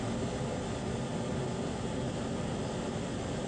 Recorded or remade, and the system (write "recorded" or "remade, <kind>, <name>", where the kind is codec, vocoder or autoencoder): recorded